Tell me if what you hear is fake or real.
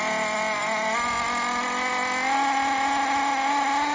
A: real